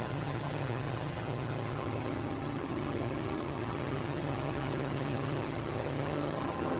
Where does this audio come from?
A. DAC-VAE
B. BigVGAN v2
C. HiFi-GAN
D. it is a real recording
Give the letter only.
C